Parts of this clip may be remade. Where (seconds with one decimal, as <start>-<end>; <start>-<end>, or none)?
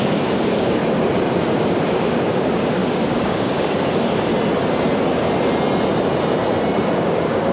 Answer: 0.0-0.8; 1.3-4.3; 7.0-7.5